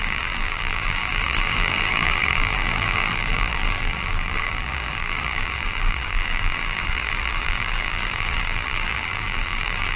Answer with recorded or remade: remade